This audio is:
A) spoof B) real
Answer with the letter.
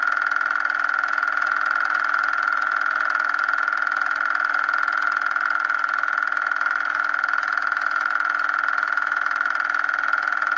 B